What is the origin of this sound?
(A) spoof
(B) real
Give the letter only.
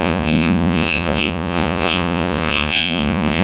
A